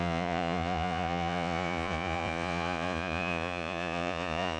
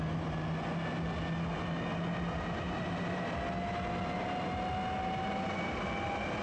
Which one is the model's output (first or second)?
first